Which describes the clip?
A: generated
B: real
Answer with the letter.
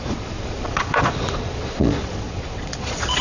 A